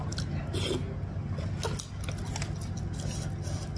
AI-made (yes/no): no